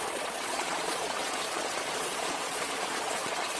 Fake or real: fake